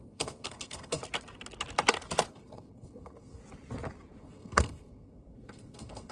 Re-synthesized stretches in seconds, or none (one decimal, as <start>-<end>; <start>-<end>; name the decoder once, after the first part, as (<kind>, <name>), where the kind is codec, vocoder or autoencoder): 0.0-1.0 (codec, SNAC); 2.3-3.4; 4.2-6.1